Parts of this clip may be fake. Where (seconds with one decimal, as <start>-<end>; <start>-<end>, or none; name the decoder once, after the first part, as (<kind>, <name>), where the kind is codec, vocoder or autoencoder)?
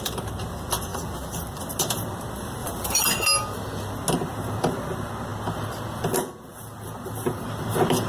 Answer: 0.9-1.6 (vocoder, BigVGAN v2); 2.6-3.1; 6.5-7.4